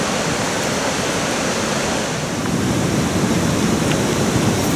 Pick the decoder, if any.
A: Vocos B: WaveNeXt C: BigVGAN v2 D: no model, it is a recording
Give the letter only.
D